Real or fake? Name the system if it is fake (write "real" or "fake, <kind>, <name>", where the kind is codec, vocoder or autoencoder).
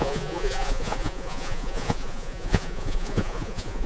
fake, vocoder, Vocos